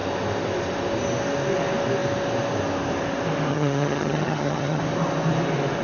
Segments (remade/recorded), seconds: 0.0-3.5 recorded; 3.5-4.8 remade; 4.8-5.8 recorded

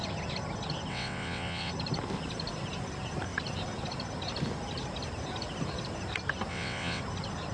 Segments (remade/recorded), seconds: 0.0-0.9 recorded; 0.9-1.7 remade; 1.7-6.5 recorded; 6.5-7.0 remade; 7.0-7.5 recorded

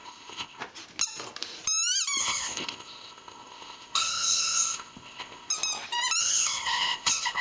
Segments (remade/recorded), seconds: 0.0-0.6 remade; 0.6-2.2 recorded; 2.2-5.5 remade; 5.5-6.2 recorded; 6.2-7.4 remade